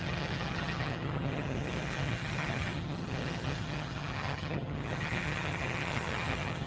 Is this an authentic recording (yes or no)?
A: no